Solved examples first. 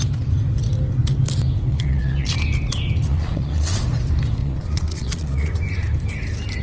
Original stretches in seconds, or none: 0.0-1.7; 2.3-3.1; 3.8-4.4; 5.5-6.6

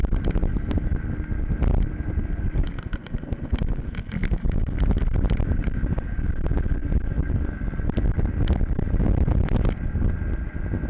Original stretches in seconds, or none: 0.0-10.9

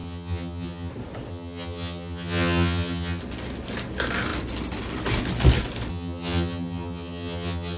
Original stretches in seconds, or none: 0.9-1.3; 3.2-5.9

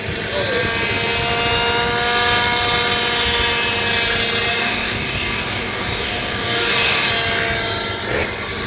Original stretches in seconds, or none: 0.0-4.5; 7.1-8.7

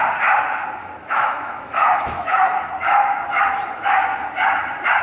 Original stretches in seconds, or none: 0.0-1.0; 3.4-5.0

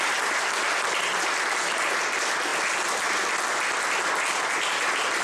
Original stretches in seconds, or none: 0.0-5.2

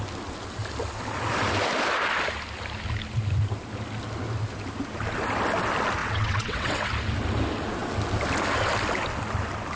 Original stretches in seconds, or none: 0.0-6.0; 6.9-9.8